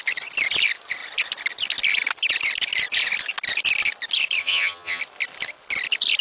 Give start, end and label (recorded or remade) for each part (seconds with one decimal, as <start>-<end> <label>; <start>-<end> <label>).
0.0-4.4 recorded; 4.4-5.0 remade; 5.0-6.2 recorded